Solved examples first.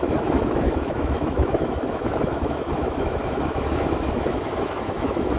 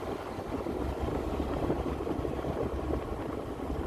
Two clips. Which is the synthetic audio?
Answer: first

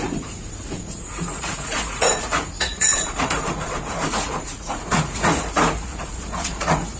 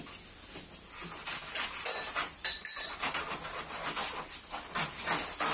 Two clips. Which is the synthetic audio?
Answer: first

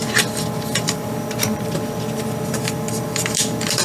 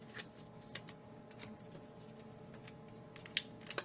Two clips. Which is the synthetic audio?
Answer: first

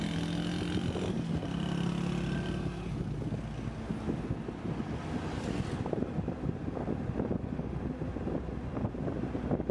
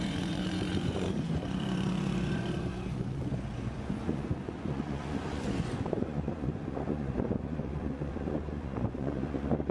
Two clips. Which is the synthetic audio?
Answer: second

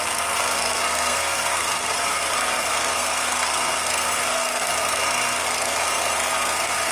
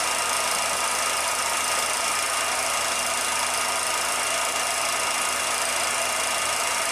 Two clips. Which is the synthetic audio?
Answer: first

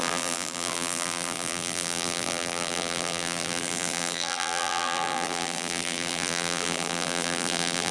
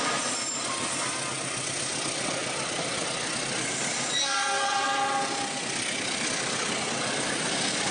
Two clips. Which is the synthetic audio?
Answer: first